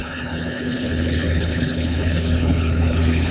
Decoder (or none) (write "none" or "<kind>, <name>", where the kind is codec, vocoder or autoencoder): codec, HILCodec